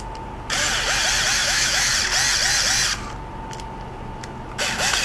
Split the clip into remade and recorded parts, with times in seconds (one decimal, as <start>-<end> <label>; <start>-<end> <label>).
0.0-1.4 recorded; 1.4-1.9 remade; 1.9-5.0 recorded